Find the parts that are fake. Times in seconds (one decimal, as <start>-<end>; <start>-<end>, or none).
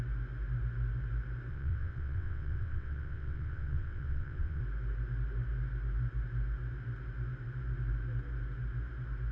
1.5-4.6